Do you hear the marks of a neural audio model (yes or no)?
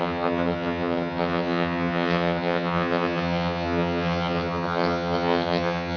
yes